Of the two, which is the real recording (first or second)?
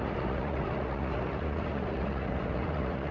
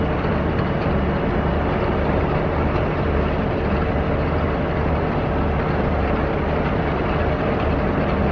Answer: second